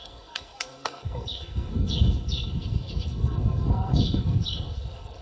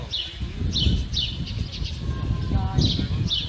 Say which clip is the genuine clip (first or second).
second